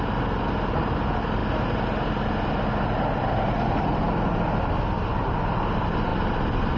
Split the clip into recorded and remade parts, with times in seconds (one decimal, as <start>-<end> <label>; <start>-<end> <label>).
0.0-6.8 recorded